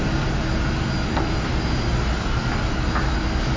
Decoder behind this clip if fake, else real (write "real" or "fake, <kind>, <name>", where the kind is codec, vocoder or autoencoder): real